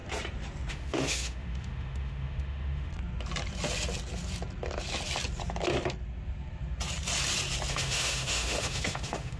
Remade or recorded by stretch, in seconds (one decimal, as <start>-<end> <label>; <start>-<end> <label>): 0.0-0.7 recorded; 0.7-2.9 remade; 2.9-7.7 recorded; 7.7-9.4 remade